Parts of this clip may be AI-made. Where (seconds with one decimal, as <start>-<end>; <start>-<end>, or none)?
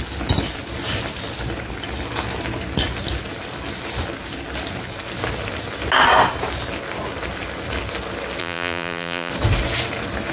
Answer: 8.4-9.3